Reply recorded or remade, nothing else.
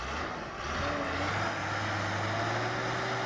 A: recorded